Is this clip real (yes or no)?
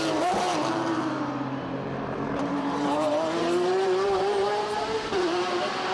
no